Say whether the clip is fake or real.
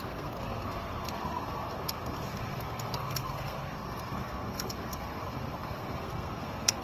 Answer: fake